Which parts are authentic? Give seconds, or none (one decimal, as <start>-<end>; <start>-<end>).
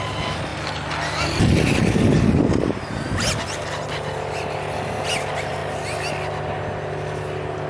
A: 0.0-7.7